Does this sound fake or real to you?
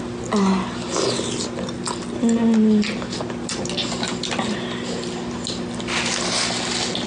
real